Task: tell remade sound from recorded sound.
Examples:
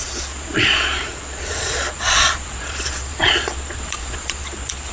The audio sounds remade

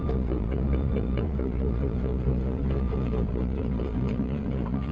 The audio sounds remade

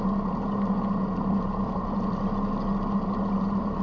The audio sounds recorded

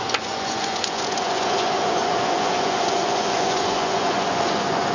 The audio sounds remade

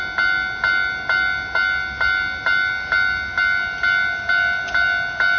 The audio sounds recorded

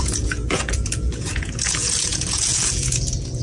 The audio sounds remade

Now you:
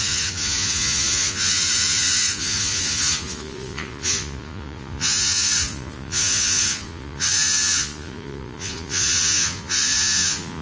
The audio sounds remade